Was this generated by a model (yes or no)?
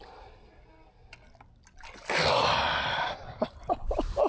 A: no